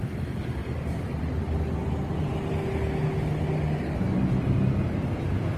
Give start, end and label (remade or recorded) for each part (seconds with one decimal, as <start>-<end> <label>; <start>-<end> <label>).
0.0-5.6 recorded